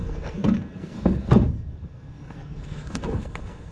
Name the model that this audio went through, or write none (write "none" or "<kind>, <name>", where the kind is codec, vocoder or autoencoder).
codec, SNAC